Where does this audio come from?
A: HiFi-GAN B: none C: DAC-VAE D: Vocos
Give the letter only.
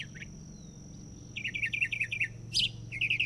B